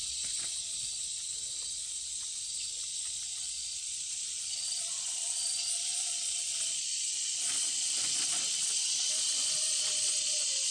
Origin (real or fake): fake